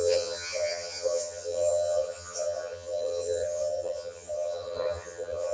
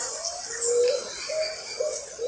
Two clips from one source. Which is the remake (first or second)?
first